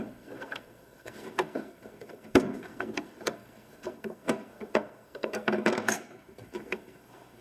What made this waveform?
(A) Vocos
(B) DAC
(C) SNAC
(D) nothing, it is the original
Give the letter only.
C